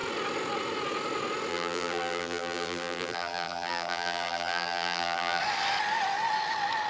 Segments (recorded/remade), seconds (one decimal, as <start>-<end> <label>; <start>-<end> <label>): 0.0-1.5 recorded; 1.5-5.4 remade; 5.4-6.9 recorded